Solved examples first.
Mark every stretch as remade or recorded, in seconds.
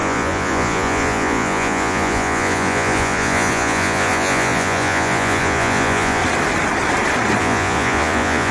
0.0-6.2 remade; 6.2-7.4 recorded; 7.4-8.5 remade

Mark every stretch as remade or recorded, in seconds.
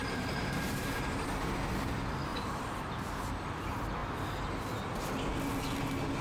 0.0-1.3 remade; 1.3-2.3 recorded; 2.3-2.9 remade; 2.9-6.2 recorded